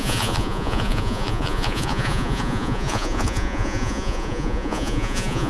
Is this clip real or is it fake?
fake